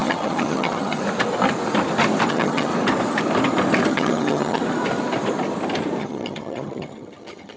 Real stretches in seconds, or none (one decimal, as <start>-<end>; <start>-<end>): 1.0-2.3; 2.7-3.9; 4.6-6.0